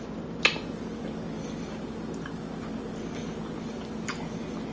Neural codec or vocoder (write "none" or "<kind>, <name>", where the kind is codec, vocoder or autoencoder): none